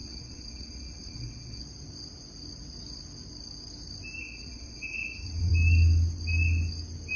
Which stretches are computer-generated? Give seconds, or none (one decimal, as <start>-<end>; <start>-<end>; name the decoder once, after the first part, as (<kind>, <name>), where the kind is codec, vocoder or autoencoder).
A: 0.0-1.6 (vocoder, WaveNeXt); 4.2-5.5